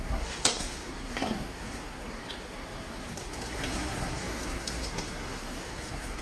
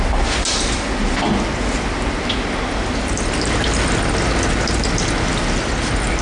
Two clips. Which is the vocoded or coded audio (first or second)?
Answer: first